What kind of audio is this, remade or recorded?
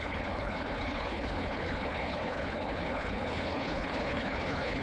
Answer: remade